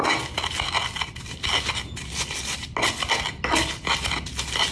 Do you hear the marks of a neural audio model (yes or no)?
no